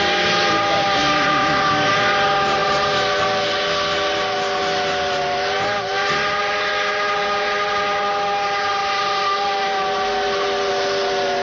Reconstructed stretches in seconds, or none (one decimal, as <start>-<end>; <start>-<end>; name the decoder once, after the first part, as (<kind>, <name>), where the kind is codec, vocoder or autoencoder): none